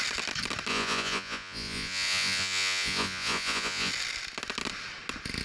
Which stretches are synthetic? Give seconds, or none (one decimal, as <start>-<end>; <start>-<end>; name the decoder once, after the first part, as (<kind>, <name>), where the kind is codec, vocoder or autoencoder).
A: 0.7-3.9 (vocoder, Vocos)